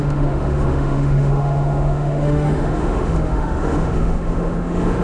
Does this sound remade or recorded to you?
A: remade